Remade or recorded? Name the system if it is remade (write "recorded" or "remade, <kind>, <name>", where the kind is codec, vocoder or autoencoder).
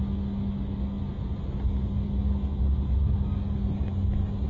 recorded